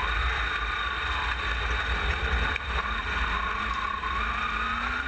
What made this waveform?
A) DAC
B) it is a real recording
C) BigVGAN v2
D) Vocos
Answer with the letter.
B